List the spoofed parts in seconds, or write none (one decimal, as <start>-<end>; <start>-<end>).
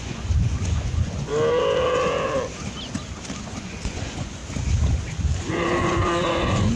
0.0-1.3; 3.4-4.4; 5.4-6.8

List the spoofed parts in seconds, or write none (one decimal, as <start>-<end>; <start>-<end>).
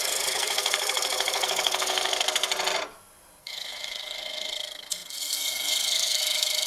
0.0-2.5; 3.4-6.7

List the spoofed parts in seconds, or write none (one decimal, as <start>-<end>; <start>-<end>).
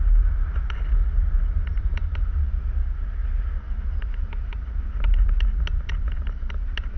none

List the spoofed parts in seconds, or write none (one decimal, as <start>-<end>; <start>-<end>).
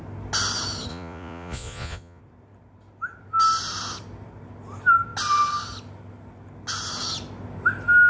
0.9-2.2